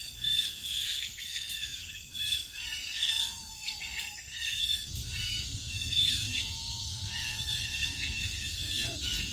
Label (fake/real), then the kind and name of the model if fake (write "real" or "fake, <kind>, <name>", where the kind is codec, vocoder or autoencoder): fake, codec, SNAC